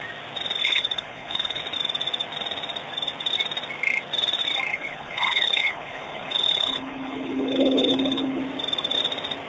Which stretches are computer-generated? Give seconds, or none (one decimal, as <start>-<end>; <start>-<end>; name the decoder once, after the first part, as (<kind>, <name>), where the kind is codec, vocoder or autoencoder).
0.6-1.6 (codec, HILCodec); 4.7-8.4